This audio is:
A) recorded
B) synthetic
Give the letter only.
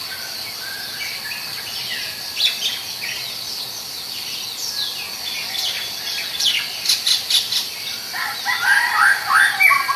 A